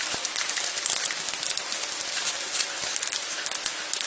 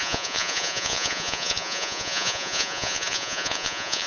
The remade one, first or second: second